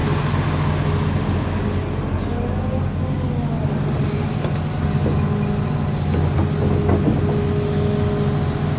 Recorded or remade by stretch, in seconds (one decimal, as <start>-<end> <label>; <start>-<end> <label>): 0.0-8.8 recorded